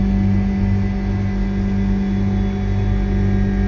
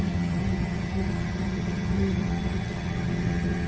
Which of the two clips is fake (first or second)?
second